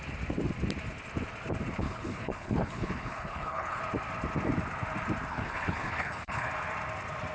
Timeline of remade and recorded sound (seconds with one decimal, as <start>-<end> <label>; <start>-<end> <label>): 0.0-1.8 recorded; 1.8-3.8 remade; 3.8-5.3 recorded; 5.3-6.5 remade; 6.5-7.3 recorded